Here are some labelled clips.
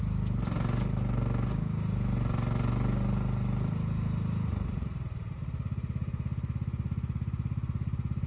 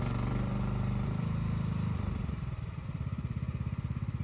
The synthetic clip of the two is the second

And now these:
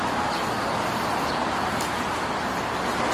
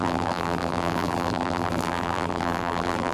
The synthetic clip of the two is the second